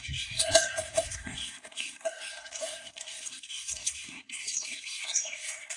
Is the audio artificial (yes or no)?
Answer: yes